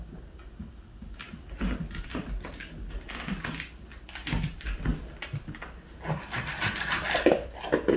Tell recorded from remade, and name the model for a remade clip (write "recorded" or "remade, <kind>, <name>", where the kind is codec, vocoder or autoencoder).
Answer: recorded